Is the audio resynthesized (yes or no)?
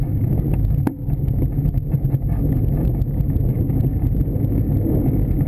no